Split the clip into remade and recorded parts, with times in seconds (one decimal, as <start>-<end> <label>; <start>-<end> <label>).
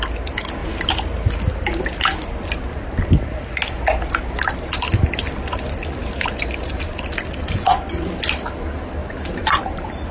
0.0-6.0 recorded; 6.0-6.7 remade; 6.7-9.0 recorded; 9.0-10.1 remade